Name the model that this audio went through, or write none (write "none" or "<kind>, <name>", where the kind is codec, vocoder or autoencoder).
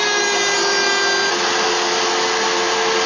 none